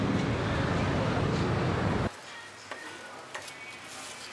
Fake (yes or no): no